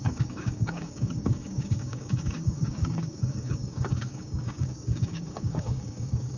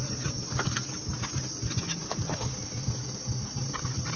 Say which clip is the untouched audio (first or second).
second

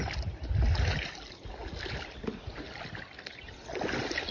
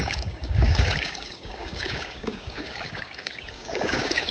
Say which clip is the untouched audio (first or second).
first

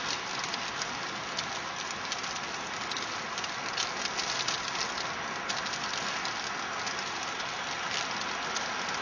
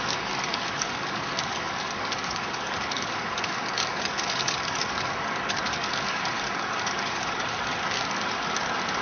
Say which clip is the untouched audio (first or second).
first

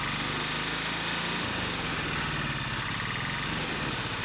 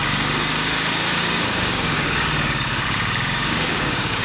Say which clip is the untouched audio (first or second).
first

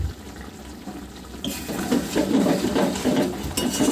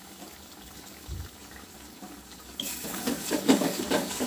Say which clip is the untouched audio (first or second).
first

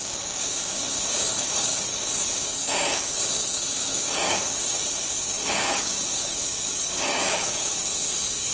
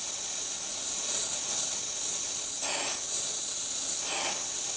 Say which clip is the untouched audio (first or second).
second